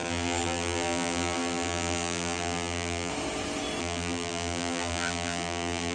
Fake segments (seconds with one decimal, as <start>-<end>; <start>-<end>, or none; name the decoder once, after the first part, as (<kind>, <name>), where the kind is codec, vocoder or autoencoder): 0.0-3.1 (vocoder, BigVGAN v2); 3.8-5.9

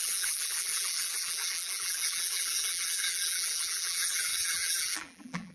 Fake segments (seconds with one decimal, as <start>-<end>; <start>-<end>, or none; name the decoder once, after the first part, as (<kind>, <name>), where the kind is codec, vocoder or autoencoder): 0.0-5.5 (vocoder, BigVGAN v2)

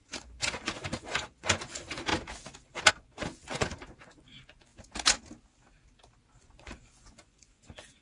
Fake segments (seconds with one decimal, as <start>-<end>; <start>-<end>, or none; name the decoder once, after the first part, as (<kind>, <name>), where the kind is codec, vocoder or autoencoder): 0.0-2.1 (vocoder, Vocos); 2.9-4.7; 6.4-8.0